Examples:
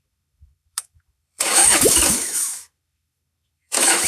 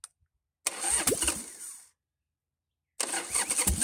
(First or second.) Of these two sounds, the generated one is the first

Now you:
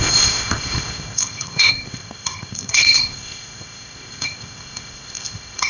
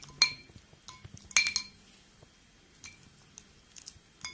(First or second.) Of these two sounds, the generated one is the first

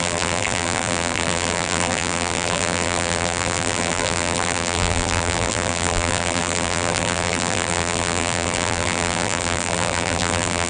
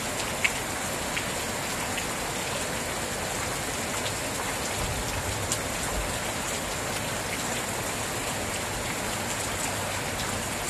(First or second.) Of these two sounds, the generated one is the first